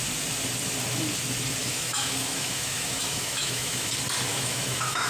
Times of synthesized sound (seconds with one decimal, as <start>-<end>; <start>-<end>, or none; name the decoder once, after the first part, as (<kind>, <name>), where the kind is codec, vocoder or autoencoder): 1.6-3.9 (autoencoder, DAC-VAE); 4.3-5.1